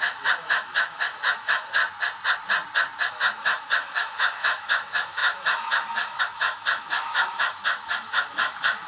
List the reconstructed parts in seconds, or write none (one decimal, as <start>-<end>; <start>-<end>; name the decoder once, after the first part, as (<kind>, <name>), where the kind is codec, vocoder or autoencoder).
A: 0.0-1.8 (autoencoder, DAC-VAE); 3.1-8.9